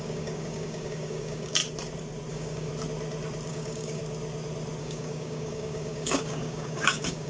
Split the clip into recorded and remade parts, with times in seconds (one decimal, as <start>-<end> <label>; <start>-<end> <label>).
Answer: 0.0-1.6 remade; 1.6-2.3 recorded; 2.3-2.7 remade; 2.7-3.5 recorded; 3.5-4.0 remade; 4.0-4.8 recorded; 4.8-7.3 remade